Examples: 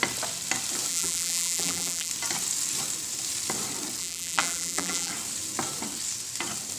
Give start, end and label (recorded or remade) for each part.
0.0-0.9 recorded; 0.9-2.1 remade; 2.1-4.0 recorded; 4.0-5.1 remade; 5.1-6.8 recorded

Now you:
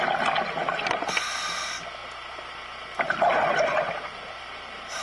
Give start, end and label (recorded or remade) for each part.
0.0-2.0 recorded; 2.0-5.0 remade